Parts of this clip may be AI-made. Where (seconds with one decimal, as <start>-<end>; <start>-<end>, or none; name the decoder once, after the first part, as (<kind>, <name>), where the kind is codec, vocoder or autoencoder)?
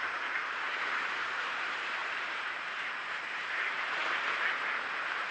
0.0-5.3 (vocoder, BigVGAN v2)